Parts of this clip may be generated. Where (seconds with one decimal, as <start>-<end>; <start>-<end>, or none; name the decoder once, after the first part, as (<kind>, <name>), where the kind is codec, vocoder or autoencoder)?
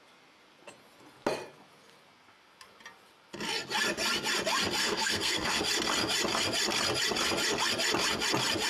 4.8-5.6 (codec, SNAC)